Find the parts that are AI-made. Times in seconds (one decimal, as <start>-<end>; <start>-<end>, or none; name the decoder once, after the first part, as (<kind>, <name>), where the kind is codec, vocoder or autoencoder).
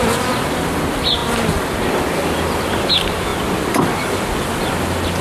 none